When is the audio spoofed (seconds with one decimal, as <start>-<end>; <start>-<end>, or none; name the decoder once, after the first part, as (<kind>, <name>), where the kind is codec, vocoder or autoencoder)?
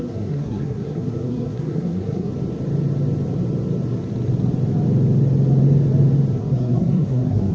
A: 0.0-2.3 (codec, SNAC); 6.4-7.5